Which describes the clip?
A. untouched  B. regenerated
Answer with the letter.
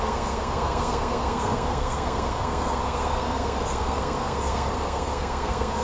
B